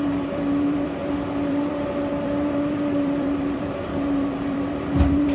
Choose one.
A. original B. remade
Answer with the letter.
B